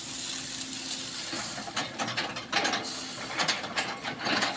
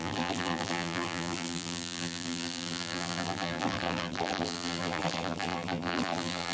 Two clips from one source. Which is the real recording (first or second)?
first